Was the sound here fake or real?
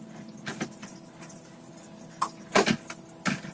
real